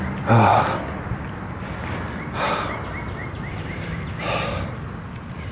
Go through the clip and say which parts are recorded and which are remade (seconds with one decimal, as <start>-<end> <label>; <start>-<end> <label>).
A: 0.0-3.2 recorded; 3.2-3.9 remade; 3.9-5.5 recorded